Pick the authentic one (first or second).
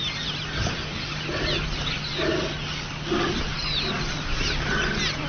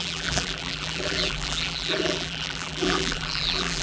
first